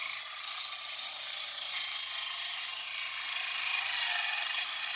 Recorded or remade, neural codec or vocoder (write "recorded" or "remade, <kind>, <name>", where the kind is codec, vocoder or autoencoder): recorded